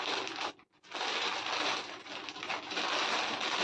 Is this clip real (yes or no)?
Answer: yes